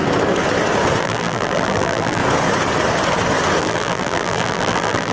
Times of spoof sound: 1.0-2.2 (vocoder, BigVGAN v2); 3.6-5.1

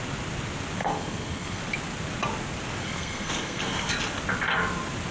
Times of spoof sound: 0.8-1.6 (codec, SNAC); 2.8-3.9